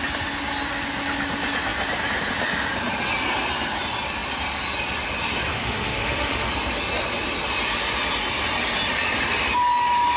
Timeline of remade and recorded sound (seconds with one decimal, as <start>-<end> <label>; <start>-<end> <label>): 0.0-5.5 recorded; 5.5-6.5 remade; 6.5-10.2 recorded